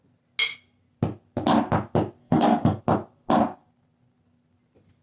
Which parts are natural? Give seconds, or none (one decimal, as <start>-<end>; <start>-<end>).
0.0-2.2; 2.8-5.0